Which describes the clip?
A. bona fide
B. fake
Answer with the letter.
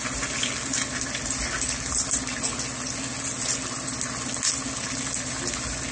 A